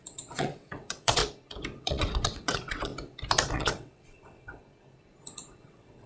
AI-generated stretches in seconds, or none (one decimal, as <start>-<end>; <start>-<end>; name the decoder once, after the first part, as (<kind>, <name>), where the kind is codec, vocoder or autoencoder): 0.0-1.2 (vocoder, WaveNeXt); 1.8-2.9; 3.5-4.6; 5.6-6.1